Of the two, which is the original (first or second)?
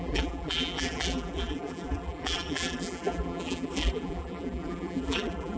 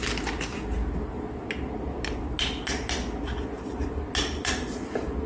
second